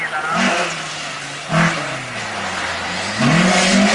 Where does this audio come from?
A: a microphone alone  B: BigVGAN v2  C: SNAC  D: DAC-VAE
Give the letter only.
A